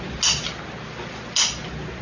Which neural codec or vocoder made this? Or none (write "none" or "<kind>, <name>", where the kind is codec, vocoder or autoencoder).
none